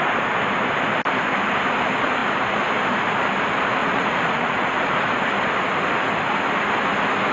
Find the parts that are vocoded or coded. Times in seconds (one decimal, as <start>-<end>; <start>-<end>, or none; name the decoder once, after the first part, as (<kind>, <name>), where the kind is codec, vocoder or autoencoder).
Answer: 3.8-5.2 (vocoder, Vocos)